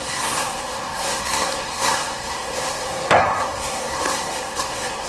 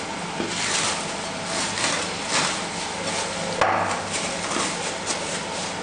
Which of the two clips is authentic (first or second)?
second